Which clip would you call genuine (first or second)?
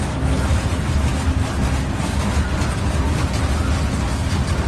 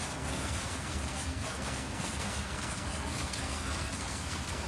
first